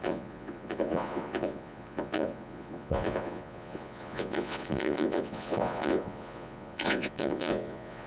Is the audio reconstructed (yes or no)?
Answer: yes